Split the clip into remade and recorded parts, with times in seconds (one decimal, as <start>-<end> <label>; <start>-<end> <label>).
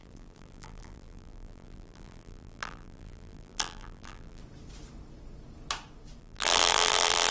0.0-4.4 remade; 4.4-6.2 recorded; 6.2-7.3 remade